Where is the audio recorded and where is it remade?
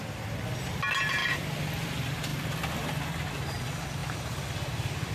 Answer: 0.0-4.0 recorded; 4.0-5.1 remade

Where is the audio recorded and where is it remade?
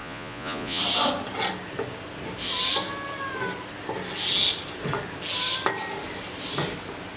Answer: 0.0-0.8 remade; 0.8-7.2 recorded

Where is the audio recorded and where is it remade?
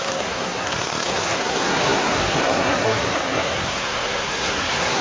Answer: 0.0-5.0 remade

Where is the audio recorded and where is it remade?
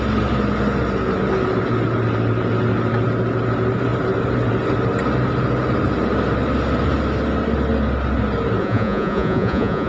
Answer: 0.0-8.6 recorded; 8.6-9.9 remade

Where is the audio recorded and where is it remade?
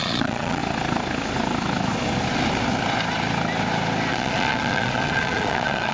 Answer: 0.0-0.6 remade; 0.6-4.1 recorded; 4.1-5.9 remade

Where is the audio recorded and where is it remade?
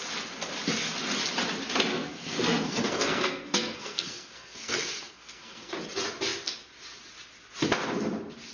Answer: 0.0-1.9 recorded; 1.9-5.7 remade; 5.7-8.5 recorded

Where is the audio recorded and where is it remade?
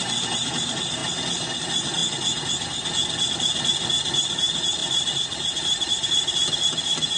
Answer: 0.0-1.0 remade; 1.0-1.6 recorded; 1.6-2.0 remade; 2.0-3.3 recorded; 3.3-3.7 remade; 3.7-4.3 recorded; 4.3-7.2 remade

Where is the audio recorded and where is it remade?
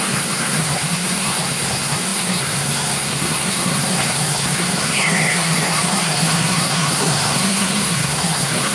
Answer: 0.0-8.7 remade